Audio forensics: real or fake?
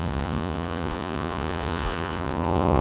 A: fake